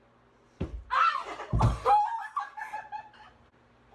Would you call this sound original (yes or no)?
yes